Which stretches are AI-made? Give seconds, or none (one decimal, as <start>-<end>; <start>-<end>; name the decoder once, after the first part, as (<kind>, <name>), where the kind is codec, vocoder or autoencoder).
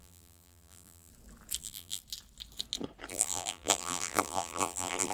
0.0-1.1 (vocoder, BigVGAN v2); 1.6-2.0; 3.1-5.1